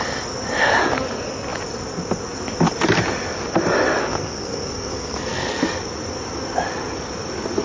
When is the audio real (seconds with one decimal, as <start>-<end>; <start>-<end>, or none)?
0.0-4.0; 5.6-7.6